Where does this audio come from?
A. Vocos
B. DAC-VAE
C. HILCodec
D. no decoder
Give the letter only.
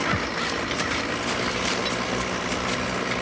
D